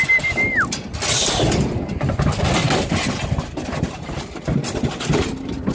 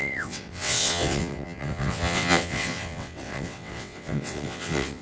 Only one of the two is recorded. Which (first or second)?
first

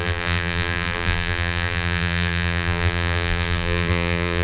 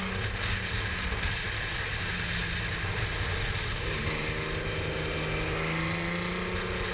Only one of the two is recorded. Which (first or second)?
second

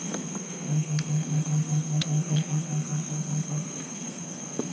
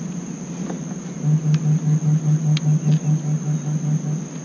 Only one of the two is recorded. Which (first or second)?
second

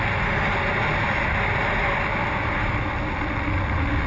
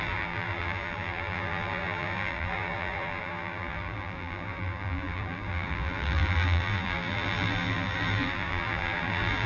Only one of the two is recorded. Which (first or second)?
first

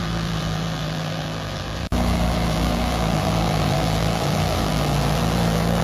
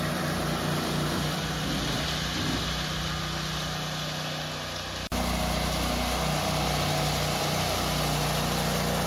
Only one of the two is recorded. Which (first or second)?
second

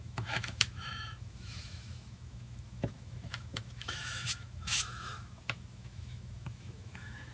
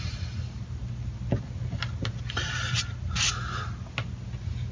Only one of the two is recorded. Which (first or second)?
second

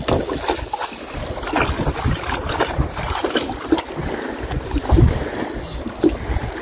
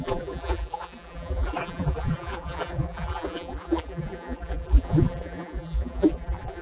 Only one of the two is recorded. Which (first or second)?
first